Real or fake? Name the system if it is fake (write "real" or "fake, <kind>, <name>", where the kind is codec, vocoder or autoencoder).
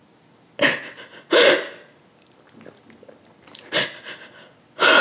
real